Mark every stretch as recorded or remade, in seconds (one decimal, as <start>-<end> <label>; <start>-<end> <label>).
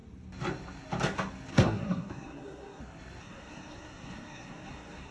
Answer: 0.0-1.5 recorded; 1.5-2.8 remade; 2.8-3.2 recorded; 3.2-5.1 remade